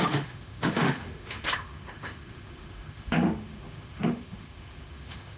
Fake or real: fake